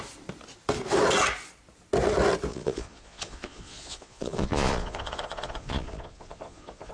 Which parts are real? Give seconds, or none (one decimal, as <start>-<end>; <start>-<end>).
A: 0.0-2.5